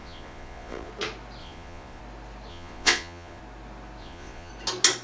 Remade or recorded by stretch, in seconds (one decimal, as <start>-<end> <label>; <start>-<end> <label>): 0.0-0.9 remade; 0.9-1.4 recorded; 1.4-2.0 remade; 2.0-2.5 recorded; 2.5-3.4 remade; 3.4-4.0 recorded; 4.0-4.5 remade; 4.5-5.0 recorded